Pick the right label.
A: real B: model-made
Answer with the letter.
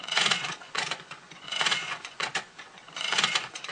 B